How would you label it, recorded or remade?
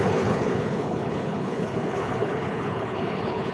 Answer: remade